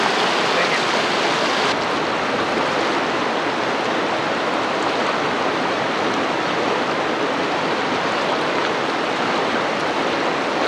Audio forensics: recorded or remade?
recorded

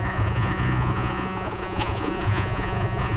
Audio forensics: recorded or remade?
remade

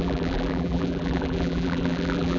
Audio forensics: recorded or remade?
remade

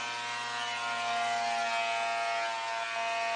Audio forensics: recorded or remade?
recorded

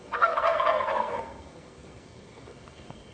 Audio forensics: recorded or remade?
remade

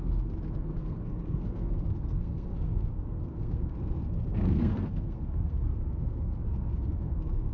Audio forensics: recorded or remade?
remade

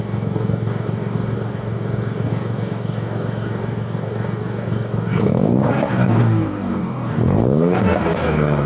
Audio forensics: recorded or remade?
remade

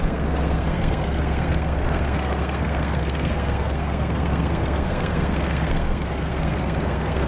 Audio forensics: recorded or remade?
remade